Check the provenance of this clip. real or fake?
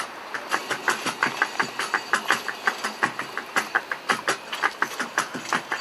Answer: real